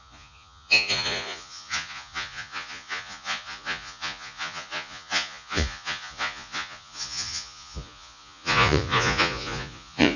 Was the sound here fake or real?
fake